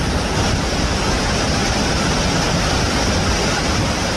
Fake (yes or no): no